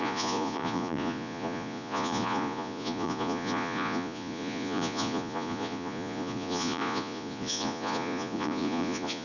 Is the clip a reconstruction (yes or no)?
yes